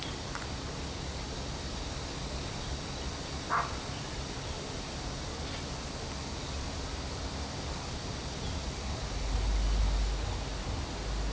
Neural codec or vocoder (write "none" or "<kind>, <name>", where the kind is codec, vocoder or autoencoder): none